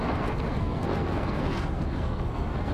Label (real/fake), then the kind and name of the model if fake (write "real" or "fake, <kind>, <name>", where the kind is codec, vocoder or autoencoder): fake, codec, SNAC